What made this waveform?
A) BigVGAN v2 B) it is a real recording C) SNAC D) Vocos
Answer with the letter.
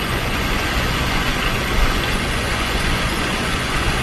D